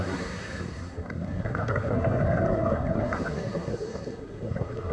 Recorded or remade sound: remade